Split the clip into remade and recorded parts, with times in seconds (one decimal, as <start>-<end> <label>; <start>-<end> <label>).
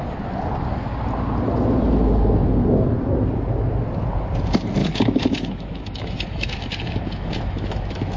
0.0-4.8 recorded; 4.8-8.2 remade